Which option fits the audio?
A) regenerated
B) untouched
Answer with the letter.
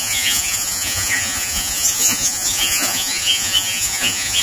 A